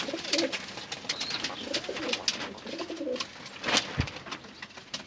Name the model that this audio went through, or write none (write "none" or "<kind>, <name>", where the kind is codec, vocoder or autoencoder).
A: none